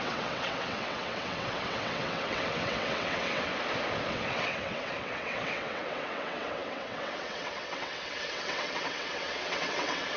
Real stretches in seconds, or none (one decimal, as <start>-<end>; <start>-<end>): 3.5-4.1